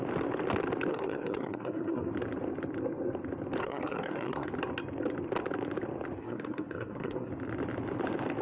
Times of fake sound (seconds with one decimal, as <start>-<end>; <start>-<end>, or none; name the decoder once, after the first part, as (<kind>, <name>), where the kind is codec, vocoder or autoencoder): 0.9-2.1 (codec, SNAC); 3.6-4.5; 6.2-7.3